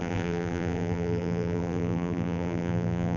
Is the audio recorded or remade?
remade